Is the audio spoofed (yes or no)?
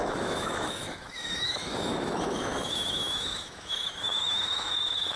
yes